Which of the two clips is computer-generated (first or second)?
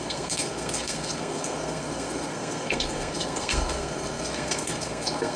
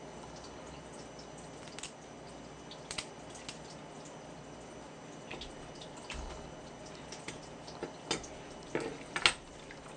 first